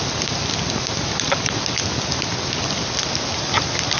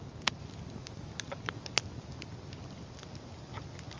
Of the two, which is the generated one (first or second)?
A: first